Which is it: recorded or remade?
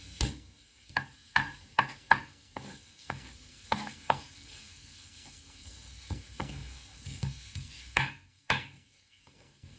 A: remade